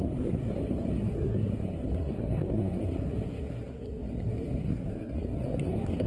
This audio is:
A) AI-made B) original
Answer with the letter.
A